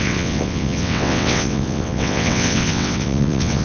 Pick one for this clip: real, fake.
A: fake